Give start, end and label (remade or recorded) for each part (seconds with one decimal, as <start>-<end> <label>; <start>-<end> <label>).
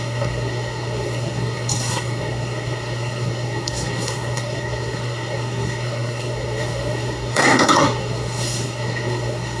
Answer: 0.0-9.6 remade